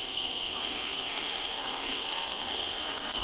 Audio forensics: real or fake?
fake